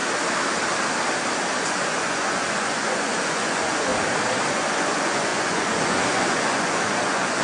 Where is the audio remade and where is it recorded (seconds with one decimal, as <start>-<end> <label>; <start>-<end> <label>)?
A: 0.0-1.6 recorded; 1.6-3.9 remade; 3.9-4.5 recorded; 4.5-7.4 remade